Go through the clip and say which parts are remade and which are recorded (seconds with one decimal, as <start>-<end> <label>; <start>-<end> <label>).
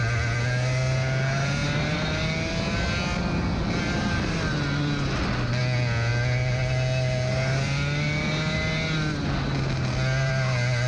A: 0.0-10.9 recorded